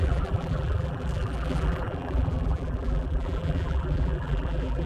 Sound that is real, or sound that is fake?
fake